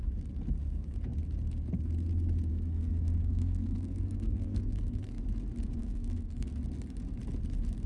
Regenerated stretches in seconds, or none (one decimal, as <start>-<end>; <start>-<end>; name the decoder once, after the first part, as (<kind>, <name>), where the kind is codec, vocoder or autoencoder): 2.5-5.2 (codec, SNAC); 5.8-6.5